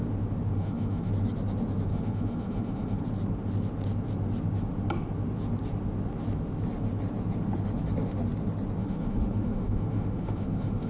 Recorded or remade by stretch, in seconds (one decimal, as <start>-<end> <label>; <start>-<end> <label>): 0.0-0.5 recorded; 0.5-1.1 remade; 1.1-1.9 recorded; 1.9-3.0 remade; 3.0-8.8 recorded; 8.8-10.9 remade